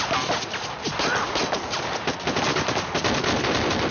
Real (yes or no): yes